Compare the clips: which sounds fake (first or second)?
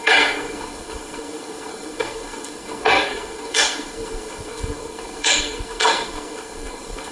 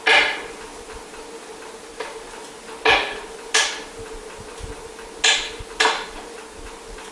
first